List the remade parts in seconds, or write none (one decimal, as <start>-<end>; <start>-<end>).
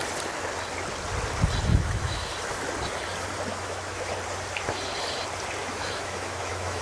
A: 1.7-2.3; 3.5-4.1; 5.6-6.8